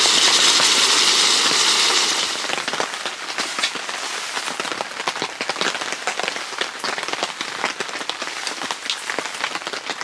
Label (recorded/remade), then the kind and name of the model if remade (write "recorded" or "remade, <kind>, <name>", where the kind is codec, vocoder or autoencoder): recorded